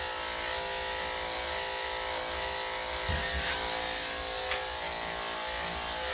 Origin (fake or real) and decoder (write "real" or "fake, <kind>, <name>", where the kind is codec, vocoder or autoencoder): real